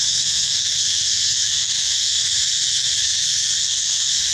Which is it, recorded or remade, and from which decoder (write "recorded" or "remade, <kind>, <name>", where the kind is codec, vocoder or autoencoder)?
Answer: remade, codec, SNAC